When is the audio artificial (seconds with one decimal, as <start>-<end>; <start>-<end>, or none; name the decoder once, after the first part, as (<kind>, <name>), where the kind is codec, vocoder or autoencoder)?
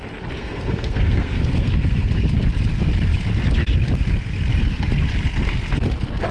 0.4-2.1 (codec, SNAC)